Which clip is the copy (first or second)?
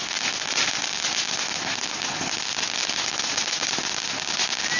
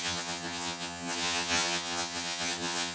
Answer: second